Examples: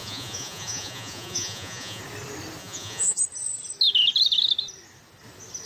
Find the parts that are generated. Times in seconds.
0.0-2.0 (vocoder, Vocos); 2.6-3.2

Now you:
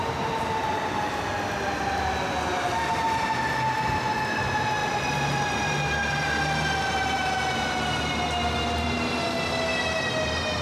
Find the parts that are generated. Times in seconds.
4.8-5.7 (vocoder, BigVGAN v2)